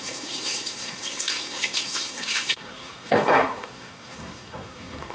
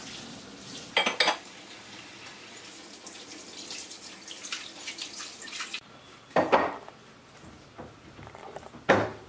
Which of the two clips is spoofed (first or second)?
first